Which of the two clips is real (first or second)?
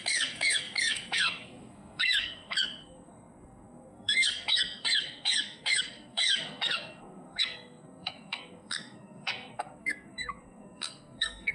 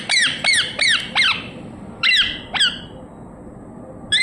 second